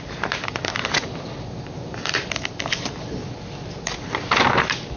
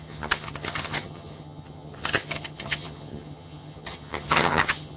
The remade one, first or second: second